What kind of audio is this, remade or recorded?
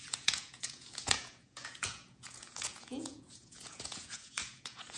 remade